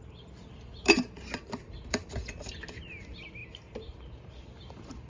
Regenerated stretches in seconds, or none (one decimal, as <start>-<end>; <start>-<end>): 0.7-2.1; 3.4-4.4